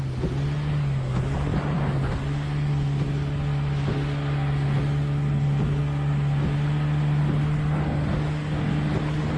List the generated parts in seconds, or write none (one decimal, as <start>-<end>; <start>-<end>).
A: none